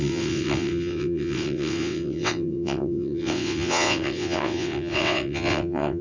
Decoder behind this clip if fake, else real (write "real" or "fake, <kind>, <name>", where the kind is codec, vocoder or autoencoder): fake, vocoder, WaveNeXt